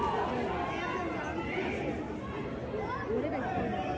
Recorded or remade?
recorded